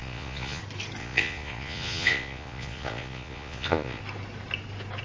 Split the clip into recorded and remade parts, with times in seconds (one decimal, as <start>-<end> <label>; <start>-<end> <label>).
0.0-0.6 remade; 0.6-1.0 recorded; 1.0-4.0 remade; 4.0-5.0 recorded

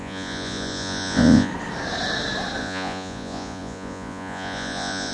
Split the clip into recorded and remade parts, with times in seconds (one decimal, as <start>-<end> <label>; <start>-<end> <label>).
0.0-1.5 remade; 1.5-2.6 recorded; 2.6-5.1 remade

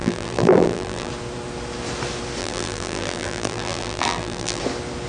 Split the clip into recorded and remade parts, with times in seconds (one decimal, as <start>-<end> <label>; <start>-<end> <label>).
0.0-1.1 remade; 1.1-2.4 recorded; 2.4-4.6 remade; 4.6-5.1 recorded

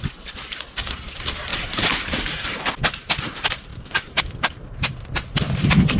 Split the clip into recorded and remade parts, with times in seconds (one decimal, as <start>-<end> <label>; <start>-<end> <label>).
0.0-1.5 recorded; 1.5-2.7 remade; 2.7-3.7 recorded; 3.7-4.2 remade; 4.2-6.0 recorded